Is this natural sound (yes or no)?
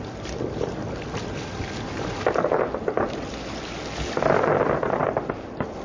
yes